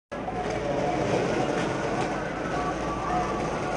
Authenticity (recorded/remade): recorded